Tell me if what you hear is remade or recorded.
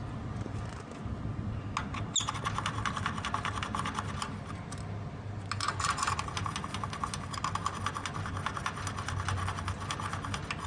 recorded